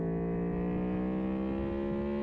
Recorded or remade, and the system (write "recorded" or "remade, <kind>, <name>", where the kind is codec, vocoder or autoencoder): recorded